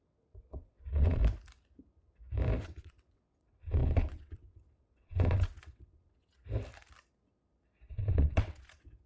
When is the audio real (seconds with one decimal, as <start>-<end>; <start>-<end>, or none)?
1.2-2.6; 6.4-7.9